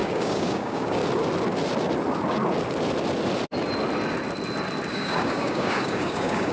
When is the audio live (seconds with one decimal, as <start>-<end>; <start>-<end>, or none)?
1.0-4.9